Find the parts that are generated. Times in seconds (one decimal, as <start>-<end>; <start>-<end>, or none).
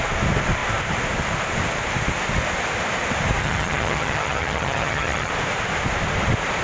3.4-5.3